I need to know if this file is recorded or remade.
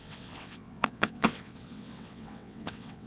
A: remade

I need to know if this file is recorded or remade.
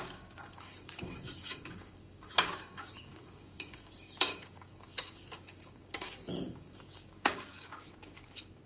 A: remade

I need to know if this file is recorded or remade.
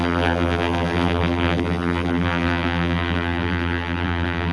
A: remade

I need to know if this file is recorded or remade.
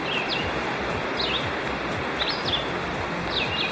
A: recorded